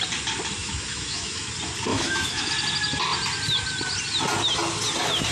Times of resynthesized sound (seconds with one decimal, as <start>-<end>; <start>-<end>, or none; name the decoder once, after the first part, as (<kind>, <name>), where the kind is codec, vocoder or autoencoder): 0.6-1.5 (autoencoder, DAC-VAE); 1.9-2.5